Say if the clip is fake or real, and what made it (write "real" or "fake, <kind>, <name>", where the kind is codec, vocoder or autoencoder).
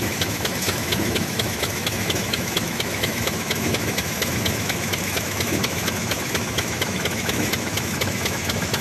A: fake, autoencoder, DAC-VAE